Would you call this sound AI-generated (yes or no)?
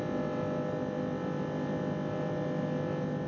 no